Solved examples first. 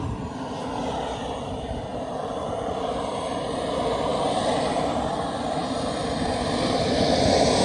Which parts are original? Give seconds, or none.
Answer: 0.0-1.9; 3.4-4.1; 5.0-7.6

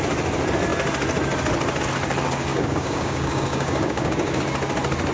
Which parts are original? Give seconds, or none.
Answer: 0.0-2.5; 4.4-5.1

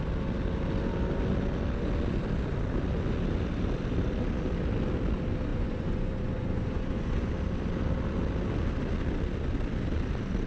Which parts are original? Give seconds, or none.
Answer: 0.0-5.5; 7.3-10.5

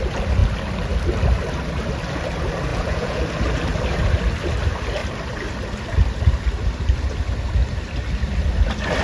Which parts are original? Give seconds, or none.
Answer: 0.0-2.7; 3.2-9.0

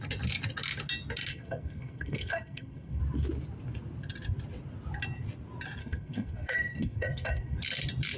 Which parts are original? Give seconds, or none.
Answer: 0.0-1.3; 3.0-5.8; 7.6-8.2

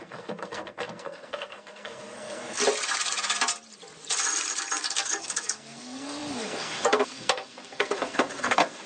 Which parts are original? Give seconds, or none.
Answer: 2.6-4.9

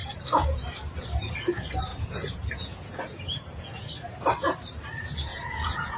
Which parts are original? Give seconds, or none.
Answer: 0.8-1.9; 3.7-5.3